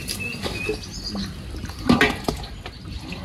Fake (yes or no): no